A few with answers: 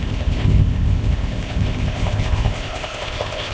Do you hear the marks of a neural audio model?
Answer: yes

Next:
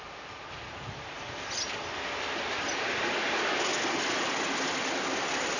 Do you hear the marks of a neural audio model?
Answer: no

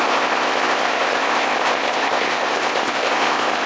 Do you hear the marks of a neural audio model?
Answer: yes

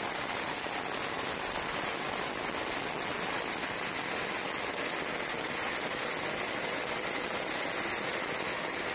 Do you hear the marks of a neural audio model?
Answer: no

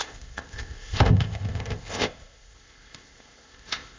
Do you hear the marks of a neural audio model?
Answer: yes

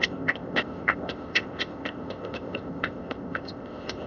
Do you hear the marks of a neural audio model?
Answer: yes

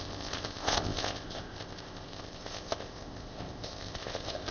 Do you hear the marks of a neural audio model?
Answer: yes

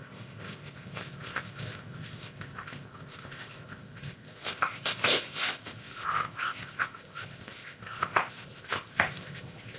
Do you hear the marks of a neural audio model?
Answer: yes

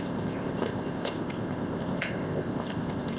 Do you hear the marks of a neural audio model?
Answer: yes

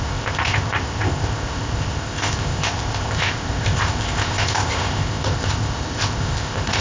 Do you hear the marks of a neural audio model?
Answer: yes